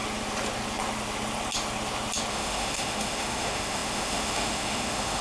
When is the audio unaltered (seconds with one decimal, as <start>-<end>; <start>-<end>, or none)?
0.0-2.3